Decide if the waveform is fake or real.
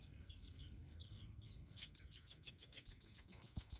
fake